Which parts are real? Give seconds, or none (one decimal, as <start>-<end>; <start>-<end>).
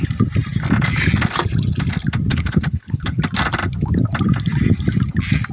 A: 0.0-2.3; 3.2-5.5